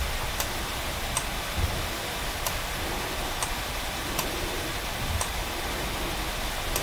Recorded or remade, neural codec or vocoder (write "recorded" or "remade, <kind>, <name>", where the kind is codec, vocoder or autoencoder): recorded